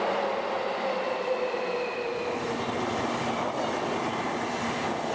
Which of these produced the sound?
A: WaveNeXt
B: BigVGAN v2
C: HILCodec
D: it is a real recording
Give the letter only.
D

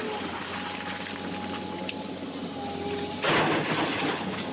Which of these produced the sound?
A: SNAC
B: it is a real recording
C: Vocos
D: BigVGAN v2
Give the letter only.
B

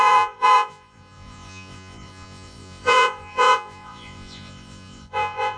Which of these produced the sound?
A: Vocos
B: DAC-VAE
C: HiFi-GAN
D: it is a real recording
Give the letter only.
A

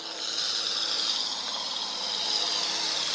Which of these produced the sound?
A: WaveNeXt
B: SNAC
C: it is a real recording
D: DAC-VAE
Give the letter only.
C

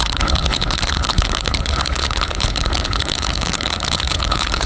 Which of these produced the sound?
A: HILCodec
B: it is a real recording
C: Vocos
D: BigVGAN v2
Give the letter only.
A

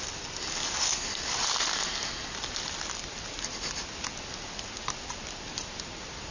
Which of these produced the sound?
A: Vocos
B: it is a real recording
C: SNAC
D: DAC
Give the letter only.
B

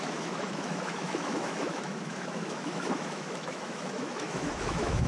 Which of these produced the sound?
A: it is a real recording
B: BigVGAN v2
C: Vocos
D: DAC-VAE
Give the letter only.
D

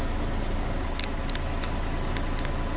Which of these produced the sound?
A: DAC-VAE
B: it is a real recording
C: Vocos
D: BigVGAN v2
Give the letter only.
B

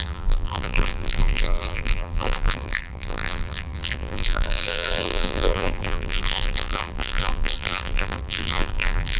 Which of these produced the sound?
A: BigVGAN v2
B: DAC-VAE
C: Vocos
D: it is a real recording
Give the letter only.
A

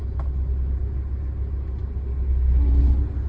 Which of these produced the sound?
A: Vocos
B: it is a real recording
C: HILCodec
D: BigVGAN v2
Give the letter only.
B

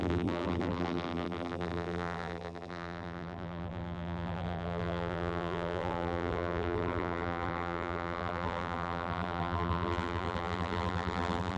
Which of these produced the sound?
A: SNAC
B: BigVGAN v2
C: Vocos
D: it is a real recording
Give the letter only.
B